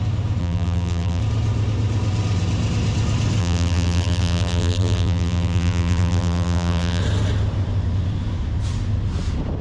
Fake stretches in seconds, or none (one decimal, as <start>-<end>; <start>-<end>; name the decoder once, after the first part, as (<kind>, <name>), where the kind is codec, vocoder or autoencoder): 0.4-1.2 (vocoder, BigVGAN v2); 3.4-7.0